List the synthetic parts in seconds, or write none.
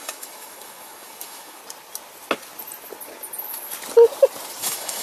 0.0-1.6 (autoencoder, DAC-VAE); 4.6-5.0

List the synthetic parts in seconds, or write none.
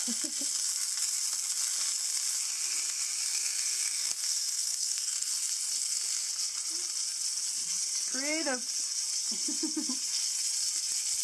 3.3-5.3 (codec, SNAC); 5.8-6.3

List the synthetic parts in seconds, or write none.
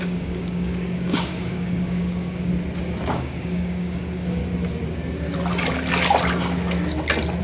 0.0-2.5 (codec, DAC); 3.1-4.4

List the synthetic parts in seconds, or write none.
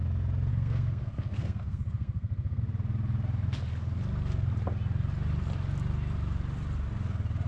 0.5-2.6 (codec, SNAC)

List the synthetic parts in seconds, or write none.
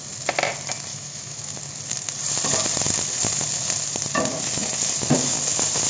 0.9-1.5 (autoencoder, DAC-VAE)